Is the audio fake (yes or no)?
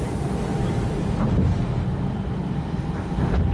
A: yes